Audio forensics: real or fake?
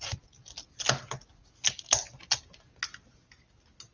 real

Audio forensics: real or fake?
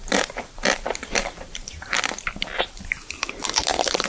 fake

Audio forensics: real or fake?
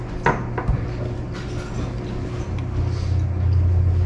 real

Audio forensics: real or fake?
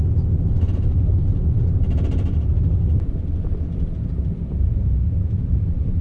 fake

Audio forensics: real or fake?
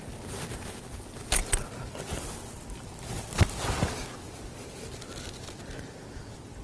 real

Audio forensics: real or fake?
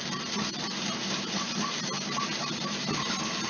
real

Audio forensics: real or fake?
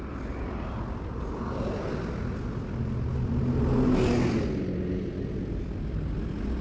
real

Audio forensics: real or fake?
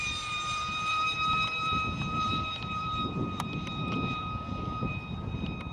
fake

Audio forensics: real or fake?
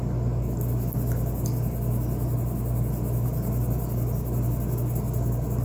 real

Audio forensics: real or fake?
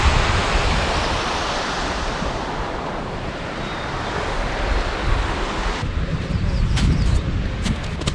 fake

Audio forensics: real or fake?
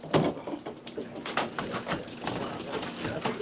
real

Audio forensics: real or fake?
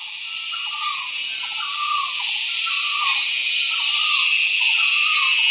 real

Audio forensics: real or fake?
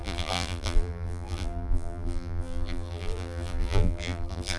fake